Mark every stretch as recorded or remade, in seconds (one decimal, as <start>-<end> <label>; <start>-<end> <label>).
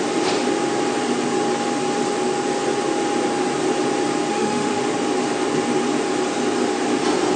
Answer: 0.0-4.3 recorded; 4.3-4.8 remade; 4.8-7.4 recorded